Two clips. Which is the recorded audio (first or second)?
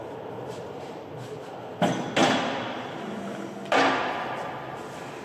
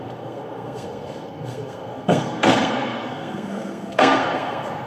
first